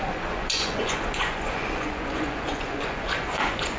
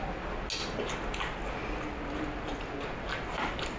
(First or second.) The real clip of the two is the second